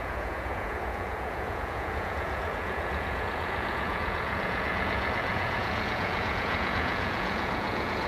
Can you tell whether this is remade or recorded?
remade